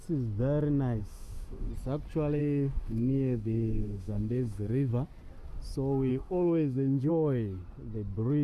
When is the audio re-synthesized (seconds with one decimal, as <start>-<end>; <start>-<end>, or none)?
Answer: 1.0-1.7; 2.4-4.9; 6.1-7.1